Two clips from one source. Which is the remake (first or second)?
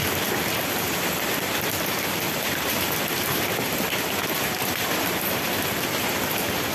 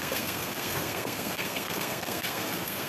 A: second